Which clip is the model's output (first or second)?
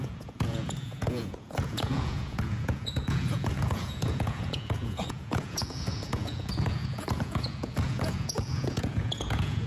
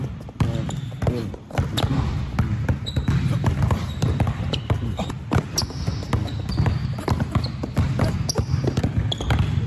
first